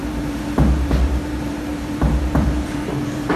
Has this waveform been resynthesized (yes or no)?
yes